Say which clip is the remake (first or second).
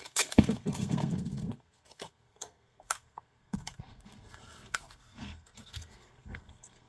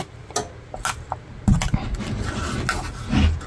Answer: first